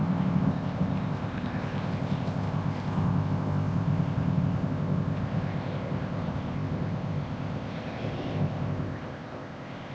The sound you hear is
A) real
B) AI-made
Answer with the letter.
B